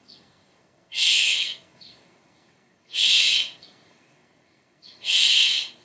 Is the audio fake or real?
fake